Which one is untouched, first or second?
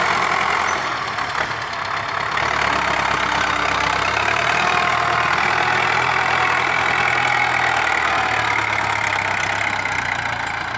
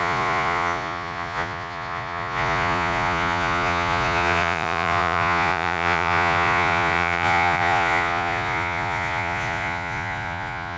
first